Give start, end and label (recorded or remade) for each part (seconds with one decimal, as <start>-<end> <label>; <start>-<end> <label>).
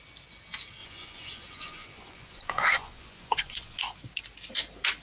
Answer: 0.0-0.8 recorded; 0.8-3.8 remade; 3.8-5.0 recorded